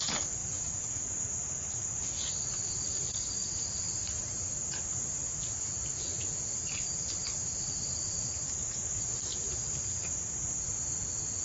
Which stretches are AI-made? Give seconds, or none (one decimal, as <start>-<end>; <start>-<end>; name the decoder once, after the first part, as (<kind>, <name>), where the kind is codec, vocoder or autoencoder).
none